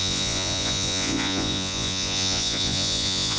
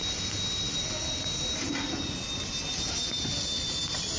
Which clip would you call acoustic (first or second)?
second